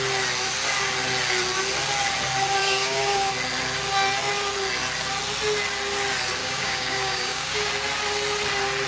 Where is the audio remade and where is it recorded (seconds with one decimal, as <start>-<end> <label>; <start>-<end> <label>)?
0.0-2.6 recorded; 2.6-3.3 remade; 3.3-6.4 recorded; 6.4-7.7 remade; 7.7-8.9 recorded